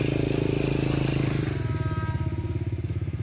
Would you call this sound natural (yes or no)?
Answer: yes